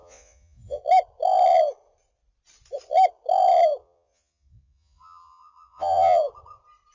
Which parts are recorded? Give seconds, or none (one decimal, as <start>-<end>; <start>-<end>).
0.8-3.8; 6.2-6.9